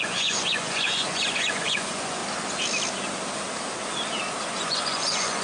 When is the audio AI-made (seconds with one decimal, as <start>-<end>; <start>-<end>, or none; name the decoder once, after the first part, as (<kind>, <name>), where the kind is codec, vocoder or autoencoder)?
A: 0.0-2.2 (vocoder, Vocos); 4.5-5.4